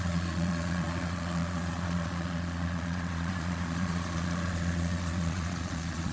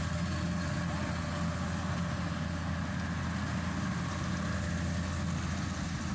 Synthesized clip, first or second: first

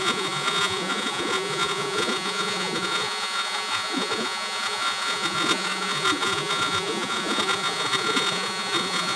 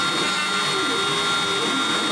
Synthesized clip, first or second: first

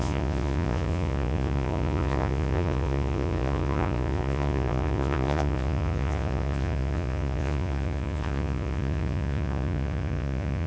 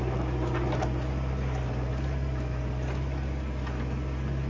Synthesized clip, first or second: first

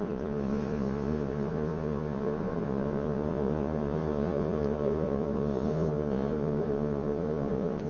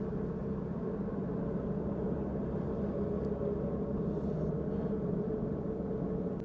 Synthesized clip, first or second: first